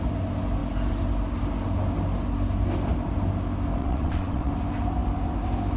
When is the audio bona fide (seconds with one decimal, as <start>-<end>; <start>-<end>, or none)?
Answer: 0.0-3.8; 4.5-5.8